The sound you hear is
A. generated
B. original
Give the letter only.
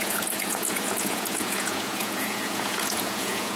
A